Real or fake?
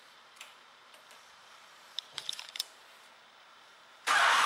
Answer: fake